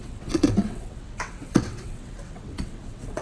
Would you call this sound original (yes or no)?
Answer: no